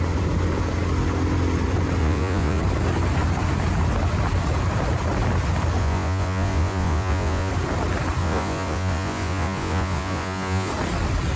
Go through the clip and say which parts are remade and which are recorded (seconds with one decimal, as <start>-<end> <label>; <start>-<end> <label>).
0.0-2.0 recorded; 2.0-2.6 remade; 2.6-5.8 recorded; 5.8-7.5 remade; 7.5-8.2 recorded; 8.2-10.7 remade; 10.7-11.4 recorded